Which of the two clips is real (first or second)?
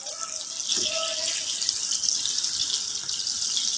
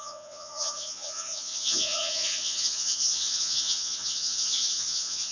first